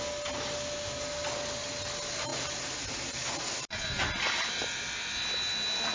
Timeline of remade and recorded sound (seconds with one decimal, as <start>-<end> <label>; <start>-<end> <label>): 0.0-5.9 recorded